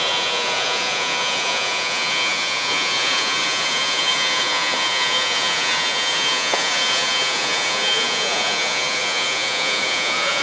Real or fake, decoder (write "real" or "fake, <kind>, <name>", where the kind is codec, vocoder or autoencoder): fake, vocoder, Vocos